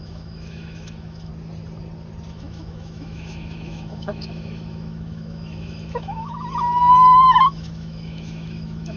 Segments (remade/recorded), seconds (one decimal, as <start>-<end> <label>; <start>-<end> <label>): 0.0-1.3 remade; 1.3-2.3 recorded; 2.3-9.0 remade